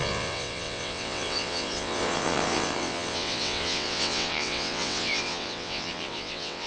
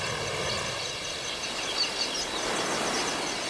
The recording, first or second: second